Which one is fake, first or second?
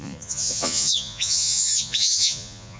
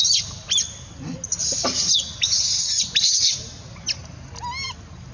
first